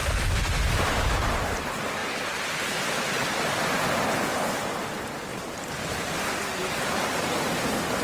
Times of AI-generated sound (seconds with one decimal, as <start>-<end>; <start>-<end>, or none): none